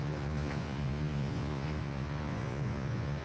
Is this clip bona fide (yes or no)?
no